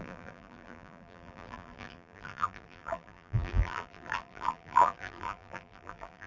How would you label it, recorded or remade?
remade